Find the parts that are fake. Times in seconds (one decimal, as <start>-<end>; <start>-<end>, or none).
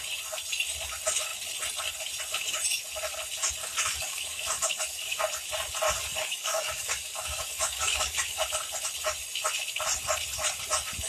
3.6-5.2; 6.0-8.4